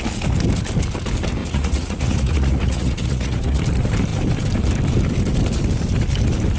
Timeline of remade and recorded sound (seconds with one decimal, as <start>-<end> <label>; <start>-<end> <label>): 0.0-1.4 recorded; 1.4-3.6 remade; 3.6-6.6 recorded

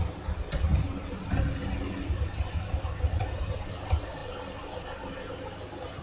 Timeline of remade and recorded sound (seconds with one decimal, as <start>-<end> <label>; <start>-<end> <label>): 0.0-6.0 recorded